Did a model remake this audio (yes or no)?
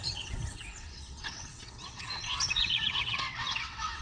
yes